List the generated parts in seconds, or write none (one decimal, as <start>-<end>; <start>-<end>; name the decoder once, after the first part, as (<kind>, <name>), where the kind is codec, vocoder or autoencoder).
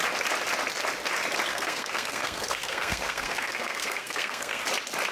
1.5-4.6 (codec, SNAC)